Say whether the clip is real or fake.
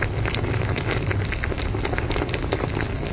real